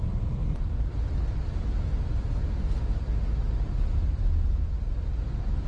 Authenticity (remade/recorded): recorded